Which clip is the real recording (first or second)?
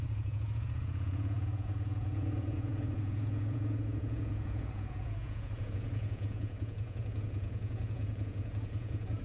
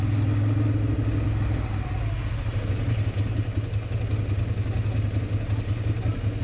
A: second